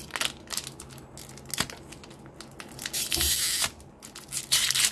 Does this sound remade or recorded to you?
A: recorded